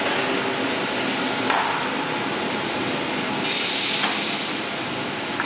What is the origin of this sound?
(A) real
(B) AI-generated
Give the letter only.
A